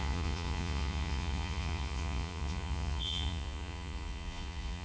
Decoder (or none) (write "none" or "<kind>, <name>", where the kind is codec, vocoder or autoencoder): vocoder, Vocos